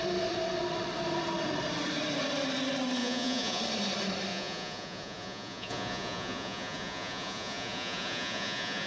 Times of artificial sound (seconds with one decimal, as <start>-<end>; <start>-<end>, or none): 3.0-3.6; 4.3-8.9